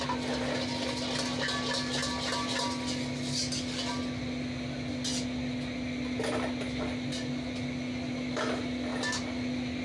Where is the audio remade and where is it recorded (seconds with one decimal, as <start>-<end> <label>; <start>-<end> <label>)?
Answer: 0.0-9.8 recorded